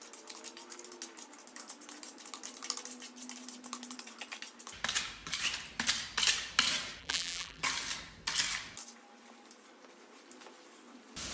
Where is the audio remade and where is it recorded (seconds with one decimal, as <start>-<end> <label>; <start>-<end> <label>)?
0.0-7.0 recorded; 7.0-7.6 remade; 7.6-11.3 recorded